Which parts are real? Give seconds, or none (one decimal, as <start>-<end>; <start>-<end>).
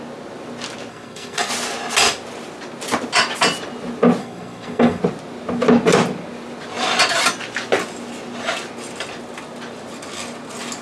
0.0-0.9; 1.5-4.2; 5.0-10.8